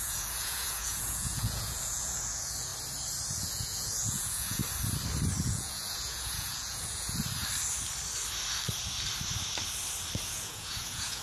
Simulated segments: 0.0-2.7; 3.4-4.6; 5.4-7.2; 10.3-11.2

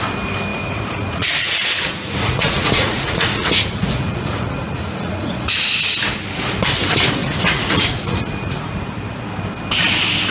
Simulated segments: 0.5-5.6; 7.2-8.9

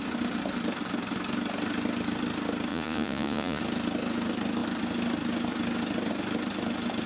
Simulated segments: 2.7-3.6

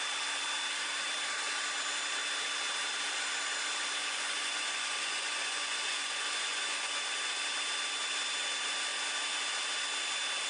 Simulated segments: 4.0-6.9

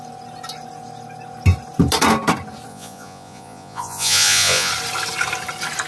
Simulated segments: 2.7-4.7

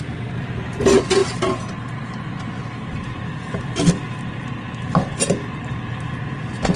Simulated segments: none

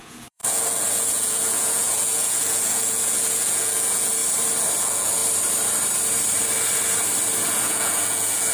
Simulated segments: 0.0-4.2; 4.8-5.2; 7.5-8.5